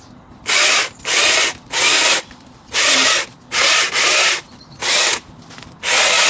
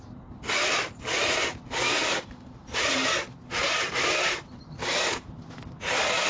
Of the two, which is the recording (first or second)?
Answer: second